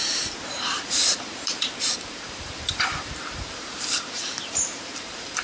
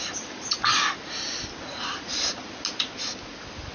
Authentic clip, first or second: second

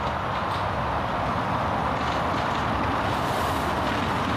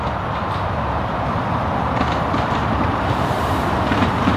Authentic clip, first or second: first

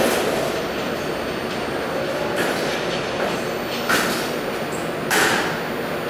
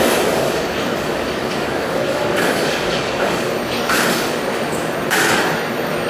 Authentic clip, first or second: first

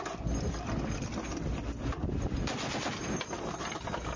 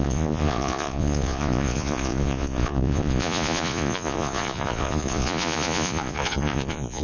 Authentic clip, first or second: first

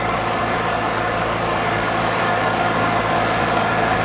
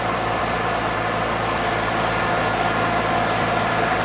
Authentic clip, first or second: second